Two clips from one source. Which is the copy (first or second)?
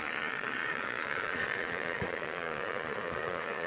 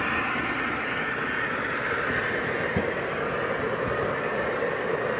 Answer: first